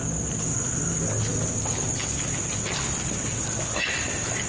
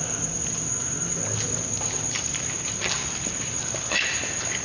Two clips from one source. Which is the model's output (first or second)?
second